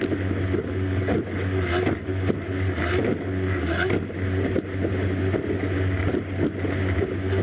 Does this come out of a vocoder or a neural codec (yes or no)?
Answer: no